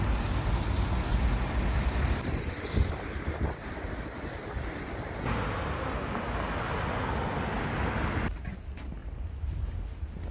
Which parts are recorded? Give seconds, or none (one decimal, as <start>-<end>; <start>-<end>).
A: 0.0-10.3